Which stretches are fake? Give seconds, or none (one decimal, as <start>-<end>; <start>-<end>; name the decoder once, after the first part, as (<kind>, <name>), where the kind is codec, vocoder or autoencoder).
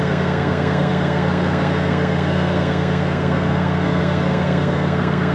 0.0-5.3 (codec, SNAC)